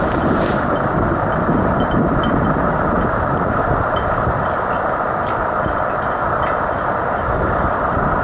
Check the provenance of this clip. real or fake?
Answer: real